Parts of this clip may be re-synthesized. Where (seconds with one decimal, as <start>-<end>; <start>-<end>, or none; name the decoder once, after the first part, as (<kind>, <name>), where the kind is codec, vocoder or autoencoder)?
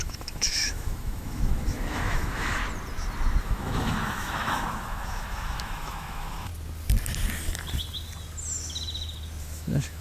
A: 0.0-2.6 (autoencoder, DAC-VAE); 3.4-6.5; 9.4-10.0